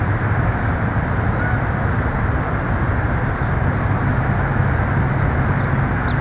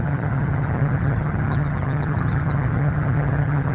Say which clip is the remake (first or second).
second